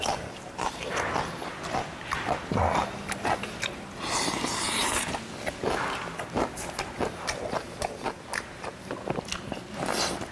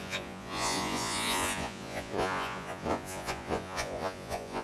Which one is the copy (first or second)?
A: second